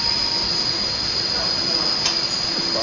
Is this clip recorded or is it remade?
recorded